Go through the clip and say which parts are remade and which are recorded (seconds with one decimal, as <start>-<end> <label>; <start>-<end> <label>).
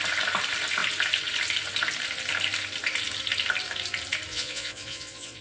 0.0-4.3 recorded; 4.3-5.4 remade